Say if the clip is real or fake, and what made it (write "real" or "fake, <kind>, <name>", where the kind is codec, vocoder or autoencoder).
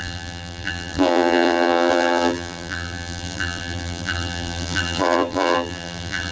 fake, vocoder, BigVGAN v2